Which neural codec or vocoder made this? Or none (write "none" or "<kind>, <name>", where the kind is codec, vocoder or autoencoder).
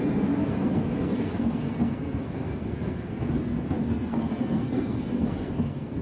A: codec, SNAC